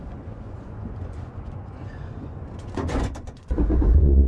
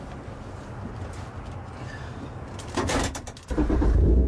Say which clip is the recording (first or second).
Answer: second